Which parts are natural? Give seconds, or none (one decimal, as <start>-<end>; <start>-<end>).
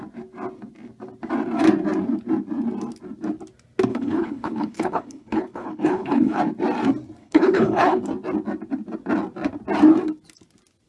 0.0-3.9; 6.4-7.2; 8.0-10.9